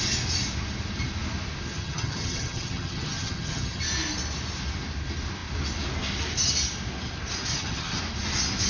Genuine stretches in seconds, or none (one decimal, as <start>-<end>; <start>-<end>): 0.0-1.7; 3.8-7.5; 8.0-8.7